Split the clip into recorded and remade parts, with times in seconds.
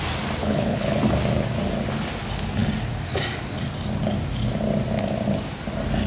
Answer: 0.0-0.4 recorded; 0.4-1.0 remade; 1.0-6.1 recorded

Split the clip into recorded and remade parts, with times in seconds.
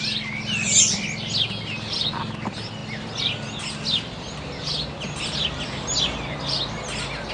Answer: 0.0-7.3 recorded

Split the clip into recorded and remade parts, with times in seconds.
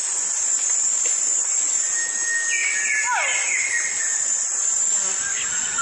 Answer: 0.0-5.8 recorded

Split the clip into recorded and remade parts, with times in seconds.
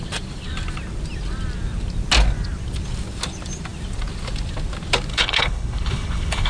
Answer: 0.0-5.1 recorded; 5.1-6.5 remade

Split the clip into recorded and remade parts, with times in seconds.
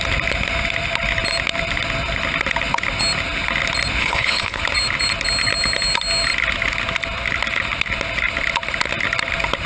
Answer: 0.0-4.0 recorded; 4.0-4.6 remade; 4.6-9.7 recorded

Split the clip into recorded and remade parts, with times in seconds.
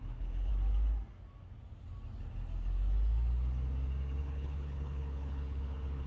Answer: 0.0-0.5 remade; 0.5-4.2 recorded; 4.2-6.1 remade